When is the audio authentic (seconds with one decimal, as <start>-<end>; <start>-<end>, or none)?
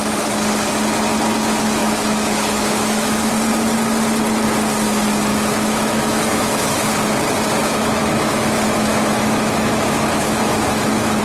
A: 0.0-1.8; 3.3-5.3; 6.9-7.6